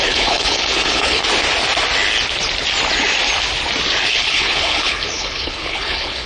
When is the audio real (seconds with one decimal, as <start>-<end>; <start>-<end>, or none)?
1.2-4.1